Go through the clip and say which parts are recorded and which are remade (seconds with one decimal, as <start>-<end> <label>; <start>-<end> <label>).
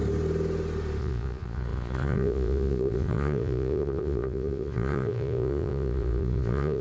0.0-1.0 recorded; 1.0-6.8 remade